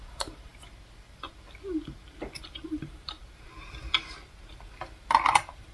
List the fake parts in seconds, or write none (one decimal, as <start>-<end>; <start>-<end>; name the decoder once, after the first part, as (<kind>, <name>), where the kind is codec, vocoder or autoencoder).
0.0-0.5 (vocoder, BigVGAN v2); 2.4-3.2; 4.5-5.7